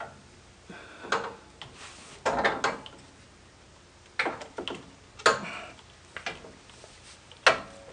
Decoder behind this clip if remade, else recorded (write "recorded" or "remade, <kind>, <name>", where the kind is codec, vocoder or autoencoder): recorded